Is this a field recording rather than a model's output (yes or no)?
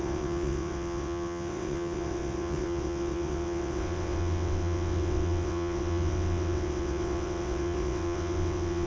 no